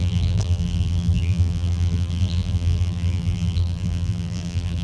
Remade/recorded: remade